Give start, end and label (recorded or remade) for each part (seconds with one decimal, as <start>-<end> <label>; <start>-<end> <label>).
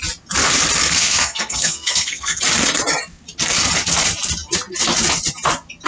0.0-0.8 recorded; 0.8-2.4 remade; 2.4-5.9 recorded